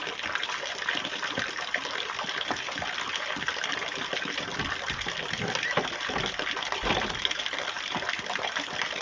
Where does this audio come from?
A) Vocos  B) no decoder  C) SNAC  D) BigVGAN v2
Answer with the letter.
B